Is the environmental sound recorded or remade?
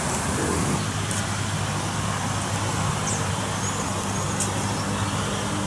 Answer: recorded